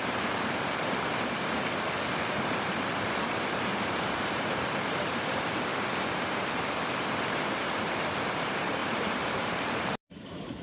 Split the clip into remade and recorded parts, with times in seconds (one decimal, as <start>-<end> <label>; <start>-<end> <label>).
0.0-1.6 remade; 1.6-3.2 recorded; 3.2-5.7 remade; 5.7-6.4 recorded; 6.4-10.6 remade